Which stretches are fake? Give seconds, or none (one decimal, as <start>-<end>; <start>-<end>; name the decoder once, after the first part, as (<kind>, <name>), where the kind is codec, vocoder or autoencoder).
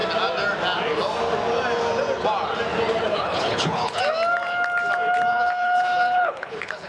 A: 3.1-4.0 (codec, HILCodec); 5.3-6.9